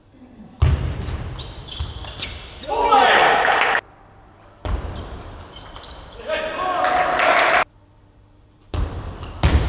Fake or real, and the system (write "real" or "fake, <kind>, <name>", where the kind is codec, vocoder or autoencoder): fake, vocoder, BigVGAN v2